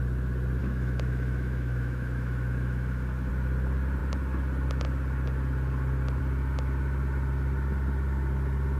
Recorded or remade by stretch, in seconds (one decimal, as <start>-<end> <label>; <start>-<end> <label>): 0.0-0.6 recorded; 0.6-3.3 remade; 3.3-8.8 recorded